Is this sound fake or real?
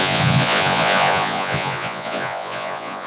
fake